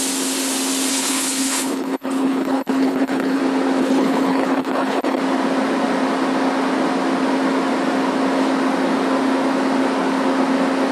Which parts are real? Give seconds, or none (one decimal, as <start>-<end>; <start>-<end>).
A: 0.0-0.9; 3.4-3.8; 5.2-10.9